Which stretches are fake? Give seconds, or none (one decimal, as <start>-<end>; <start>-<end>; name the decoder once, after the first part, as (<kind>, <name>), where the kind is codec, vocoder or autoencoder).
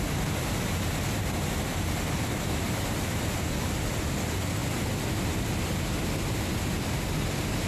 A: none